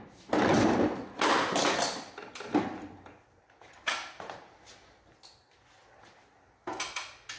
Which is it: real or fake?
real